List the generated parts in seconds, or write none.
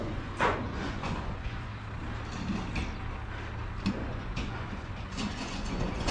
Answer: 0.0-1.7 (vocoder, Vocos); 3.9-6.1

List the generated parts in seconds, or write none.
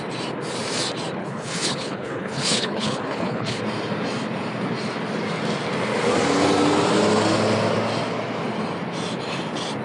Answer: 1.2-3.6 (codec, HILCodec)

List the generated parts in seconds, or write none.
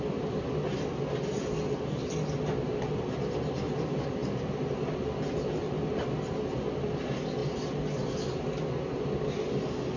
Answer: none